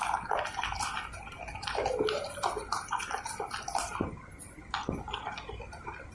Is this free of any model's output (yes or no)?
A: yes